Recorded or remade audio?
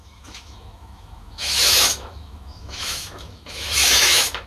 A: remade